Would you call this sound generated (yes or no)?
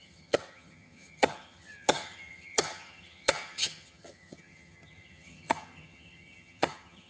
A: yes